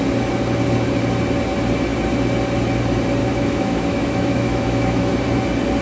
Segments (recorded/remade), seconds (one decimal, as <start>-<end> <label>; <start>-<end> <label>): 0.0-3.2 recorded; 3.2-5.1 remade; 5.1-5.8 recorded